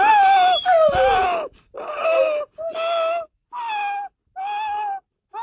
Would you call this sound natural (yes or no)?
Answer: yes